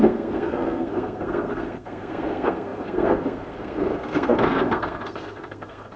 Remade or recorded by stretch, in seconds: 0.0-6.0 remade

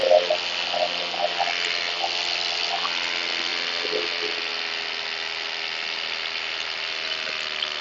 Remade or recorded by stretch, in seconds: 0.0-7.8 recorded